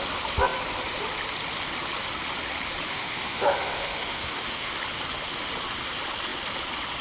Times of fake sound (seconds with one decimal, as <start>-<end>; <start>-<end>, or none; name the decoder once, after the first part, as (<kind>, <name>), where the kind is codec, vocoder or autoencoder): 2.9-4.7 (autoencoder, DAC-VAE)